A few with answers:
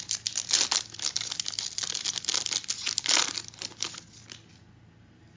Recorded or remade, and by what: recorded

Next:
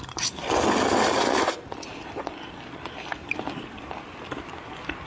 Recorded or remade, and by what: recorded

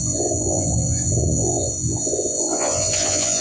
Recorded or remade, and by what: remade, vocoder, Vocos